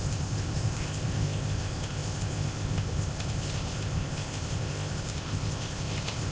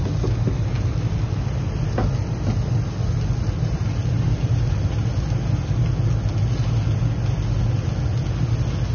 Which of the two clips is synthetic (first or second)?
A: first